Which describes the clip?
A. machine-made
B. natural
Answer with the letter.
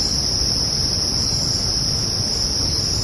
B